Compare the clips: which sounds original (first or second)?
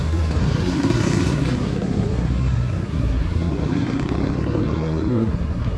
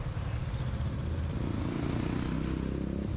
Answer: second